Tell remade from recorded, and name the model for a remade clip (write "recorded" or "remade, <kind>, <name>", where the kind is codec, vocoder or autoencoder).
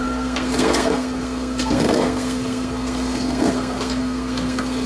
remade, codec, SNAC